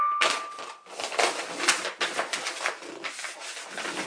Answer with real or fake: real